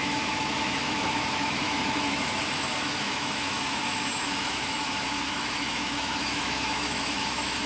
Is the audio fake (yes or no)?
yes